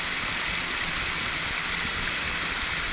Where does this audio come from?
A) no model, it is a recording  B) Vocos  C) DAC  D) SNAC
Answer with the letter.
A